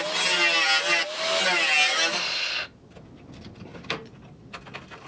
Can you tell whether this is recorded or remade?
recorded